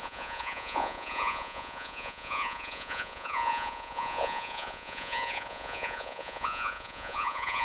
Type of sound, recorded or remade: remade